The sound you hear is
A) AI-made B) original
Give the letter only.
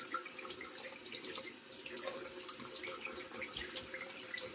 A